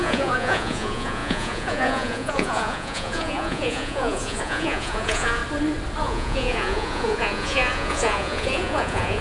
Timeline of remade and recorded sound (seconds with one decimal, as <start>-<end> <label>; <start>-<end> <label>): 0.0-5.4 remade; 5.4-6.0 recorded; 6.0-9.2 remade